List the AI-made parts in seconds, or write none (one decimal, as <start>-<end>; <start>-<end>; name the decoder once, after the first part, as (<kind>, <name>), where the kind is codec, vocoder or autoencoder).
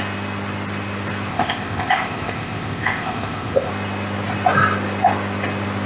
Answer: 1.3-3.7 (codec, ZipCodec)